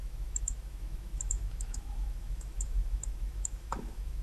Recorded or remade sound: remade